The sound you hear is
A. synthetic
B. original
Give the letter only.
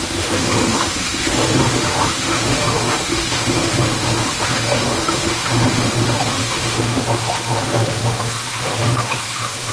A